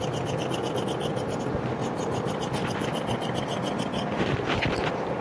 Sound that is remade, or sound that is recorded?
recorded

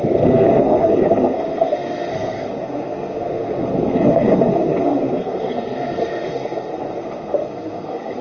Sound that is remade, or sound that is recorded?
remade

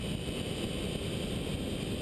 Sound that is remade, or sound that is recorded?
recorded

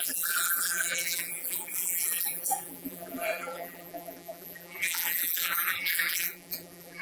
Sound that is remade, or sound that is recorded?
remade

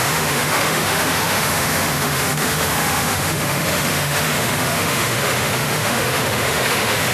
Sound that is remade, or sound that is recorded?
remade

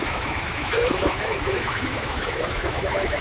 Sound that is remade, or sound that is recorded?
remade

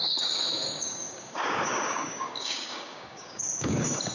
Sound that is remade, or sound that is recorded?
remade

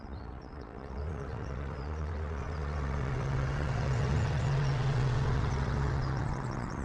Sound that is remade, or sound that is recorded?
remade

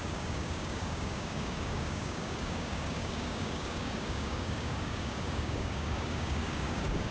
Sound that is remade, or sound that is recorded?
remade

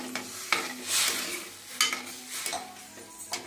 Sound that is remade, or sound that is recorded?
recorded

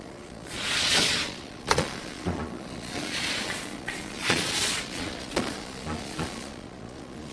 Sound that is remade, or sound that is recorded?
remade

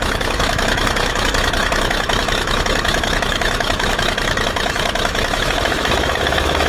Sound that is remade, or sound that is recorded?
remade